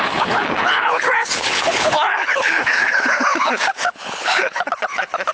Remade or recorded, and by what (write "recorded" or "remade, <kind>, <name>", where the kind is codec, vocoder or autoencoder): remade, codec, HILCodec